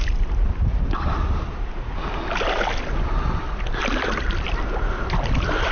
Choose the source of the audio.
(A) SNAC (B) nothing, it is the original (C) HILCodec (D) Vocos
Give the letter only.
B